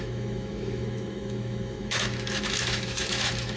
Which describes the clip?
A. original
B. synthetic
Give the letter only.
B